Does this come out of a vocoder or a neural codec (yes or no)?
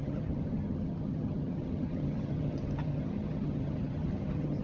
yes